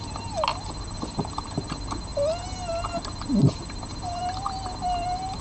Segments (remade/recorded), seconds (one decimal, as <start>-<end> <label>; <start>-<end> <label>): 0.0-5.4 recorded